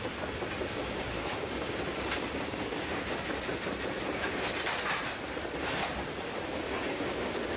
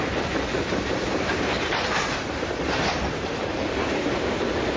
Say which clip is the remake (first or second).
second